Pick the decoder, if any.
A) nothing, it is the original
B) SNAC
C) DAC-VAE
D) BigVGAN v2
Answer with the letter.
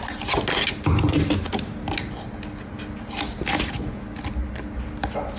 A